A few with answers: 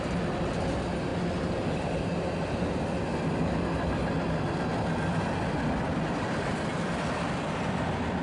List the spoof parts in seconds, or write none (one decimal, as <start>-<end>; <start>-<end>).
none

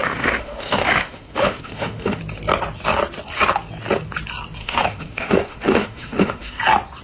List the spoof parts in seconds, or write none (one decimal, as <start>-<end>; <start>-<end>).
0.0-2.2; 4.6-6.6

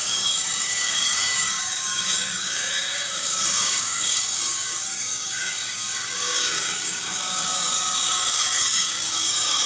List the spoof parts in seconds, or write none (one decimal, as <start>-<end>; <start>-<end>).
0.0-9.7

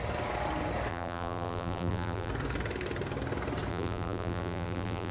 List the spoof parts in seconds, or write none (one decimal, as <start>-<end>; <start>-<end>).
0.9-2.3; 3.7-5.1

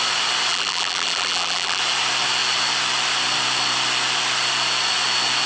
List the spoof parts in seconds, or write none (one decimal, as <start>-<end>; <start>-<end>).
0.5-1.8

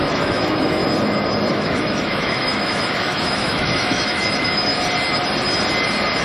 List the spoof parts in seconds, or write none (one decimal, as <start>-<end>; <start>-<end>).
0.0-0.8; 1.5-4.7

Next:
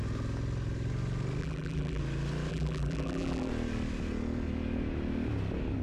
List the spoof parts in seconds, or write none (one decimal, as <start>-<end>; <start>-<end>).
1.4-2.0; 2.5-3.5

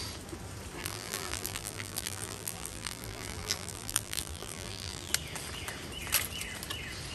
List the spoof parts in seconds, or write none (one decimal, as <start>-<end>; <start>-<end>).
0.8-5.1